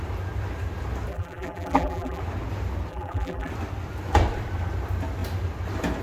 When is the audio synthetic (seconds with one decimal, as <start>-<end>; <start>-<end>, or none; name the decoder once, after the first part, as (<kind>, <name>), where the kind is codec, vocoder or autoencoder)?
1.1-2.2 (vocoder, BigVGAN v2); 2.9-3.5